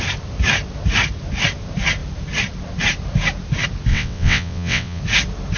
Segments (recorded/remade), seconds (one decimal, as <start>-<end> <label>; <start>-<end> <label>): 0.0-3.9 recorded; 3.9-5.0 remade; 5.0-5.6 recorded